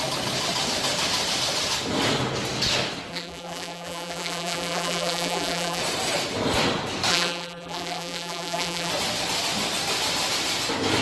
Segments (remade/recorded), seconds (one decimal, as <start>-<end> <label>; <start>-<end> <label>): 0.0-3.1 recorded; 3.1-5.8 remade; 5.8-7.1 recorded; 7.1-8.9 remade; 8.9-11.0 recorded